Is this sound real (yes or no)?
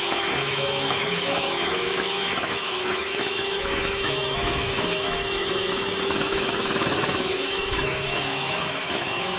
no